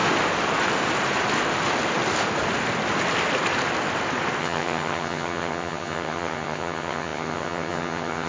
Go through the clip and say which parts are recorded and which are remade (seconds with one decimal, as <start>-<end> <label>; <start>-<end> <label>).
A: 0.0-4.4 recorded; 4.4-8.3 remade